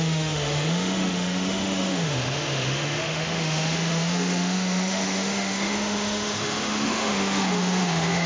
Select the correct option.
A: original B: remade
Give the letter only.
B